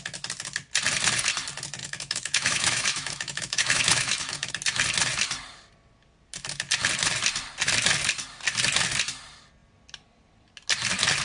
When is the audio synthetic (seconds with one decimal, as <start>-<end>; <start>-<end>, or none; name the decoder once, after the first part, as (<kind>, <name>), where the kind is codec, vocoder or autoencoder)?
1.8-4.5 (autoencoder, DAC-VAE)